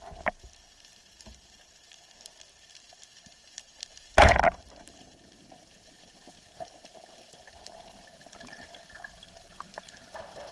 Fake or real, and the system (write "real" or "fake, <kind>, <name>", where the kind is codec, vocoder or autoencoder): fake, vocoder, BigVGAN v2